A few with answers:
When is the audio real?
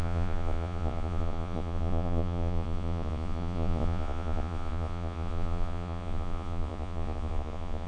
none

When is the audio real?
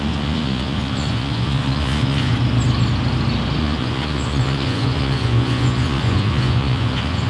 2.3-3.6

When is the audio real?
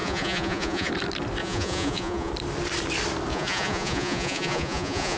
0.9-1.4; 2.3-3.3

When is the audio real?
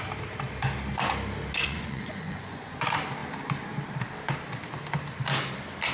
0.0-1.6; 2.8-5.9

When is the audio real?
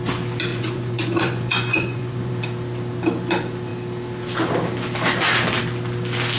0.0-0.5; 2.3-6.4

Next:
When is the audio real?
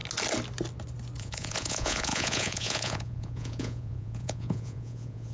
0.0-1.2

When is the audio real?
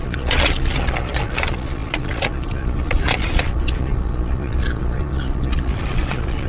none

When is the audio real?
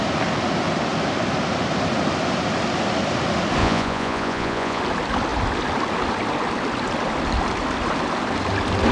0.0-3.6; 4.8-8.9